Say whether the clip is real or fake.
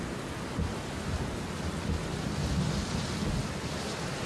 real